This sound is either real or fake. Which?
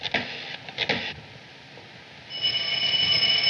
real